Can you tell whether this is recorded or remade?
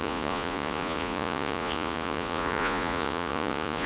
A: remade